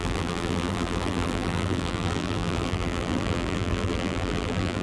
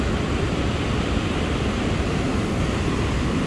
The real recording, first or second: second